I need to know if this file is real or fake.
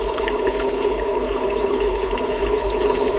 fake